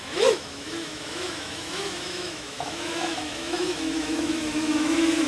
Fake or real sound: fake